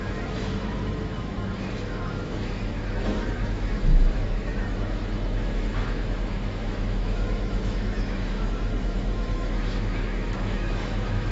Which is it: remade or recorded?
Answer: remade